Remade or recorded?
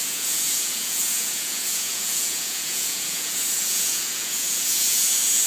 remade